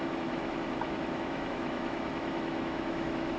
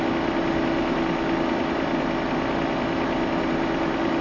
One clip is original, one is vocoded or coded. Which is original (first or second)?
second